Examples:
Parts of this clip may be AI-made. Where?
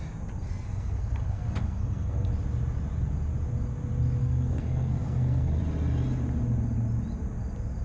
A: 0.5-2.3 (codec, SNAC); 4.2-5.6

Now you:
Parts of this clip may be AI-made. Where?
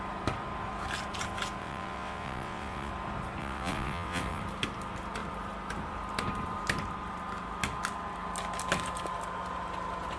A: 1.6-2.9 (vocoder, WaveNeXt); 3.4-4.4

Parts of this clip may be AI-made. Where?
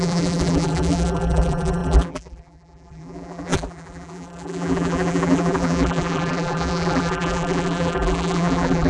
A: 0.0-8.9 (vocoder, BigVGAN v2)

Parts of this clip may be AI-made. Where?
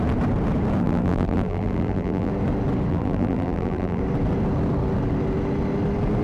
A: 0.8-2.3 (vocoder, BigVGAN v2); 2.9-4.0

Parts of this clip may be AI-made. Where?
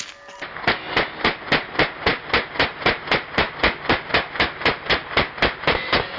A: none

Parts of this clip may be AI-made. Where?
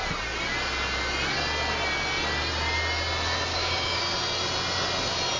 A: 3.5-4.0 (codec, DAC)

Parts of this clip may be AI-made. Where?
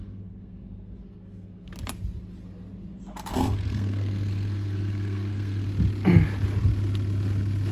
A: 0.0-1.7 (codec, SNAC); 3.1-5.7